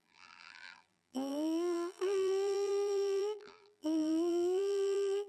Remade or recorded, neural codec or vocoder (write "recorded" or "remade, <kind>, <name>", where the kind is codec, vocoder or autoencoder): remade, vocoder, BigVGAN v2